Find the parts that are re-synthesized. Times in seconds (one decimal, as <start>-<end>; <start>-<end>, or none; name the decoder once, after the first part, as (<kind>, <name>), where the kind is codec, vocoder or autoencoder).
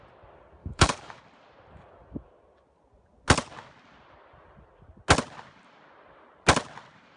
0.6-1.2 (codec, DAC)